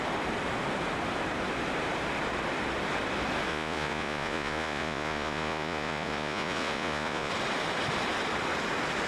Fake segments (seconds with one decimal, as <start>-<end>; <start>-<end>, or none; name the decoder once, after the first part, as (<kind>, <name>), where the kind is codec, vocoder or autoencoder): 3.5-7.3 (vocoder, Vocos)